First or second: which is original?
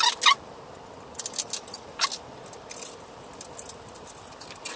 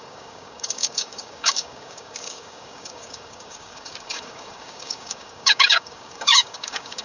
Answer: first